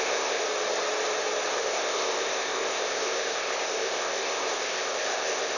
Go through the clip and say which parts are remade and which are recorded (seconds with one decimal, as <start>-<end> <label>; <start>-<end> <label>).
0.0-0.4 remade; 0.4-1.5 recorded; 1.5-5.6 remade